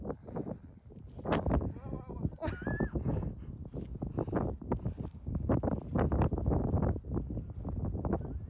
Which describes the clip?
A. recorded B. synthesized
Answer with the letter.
A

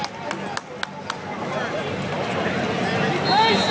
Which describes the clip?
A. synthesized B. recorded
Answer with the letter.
B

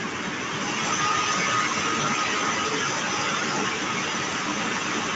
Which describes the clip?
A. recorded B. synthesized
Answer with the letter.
A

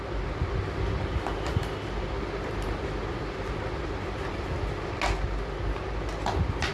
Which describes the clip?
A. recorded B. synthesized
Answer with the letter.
A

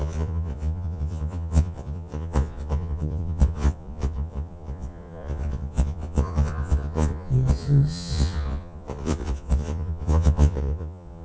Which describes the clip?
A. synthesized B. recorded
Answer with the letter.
A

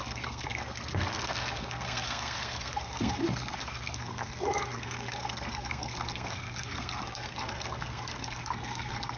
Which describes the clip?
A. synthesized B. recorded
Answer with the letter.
A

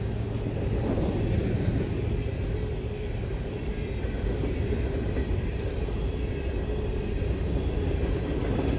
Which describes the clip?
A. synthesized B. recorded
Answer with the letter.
B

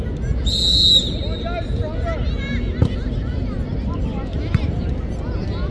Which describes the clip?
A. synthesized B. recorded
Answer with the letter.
B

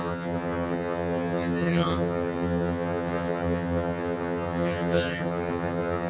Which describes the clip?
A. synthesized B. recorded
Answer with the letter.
A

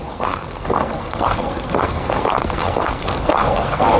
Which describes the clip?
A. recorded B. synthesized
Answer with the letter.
B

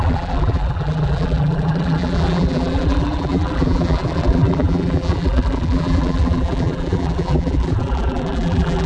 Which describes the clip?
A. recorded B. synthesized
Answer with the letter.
B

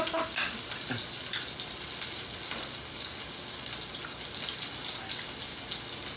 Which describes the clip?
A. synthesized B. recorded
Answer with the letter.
B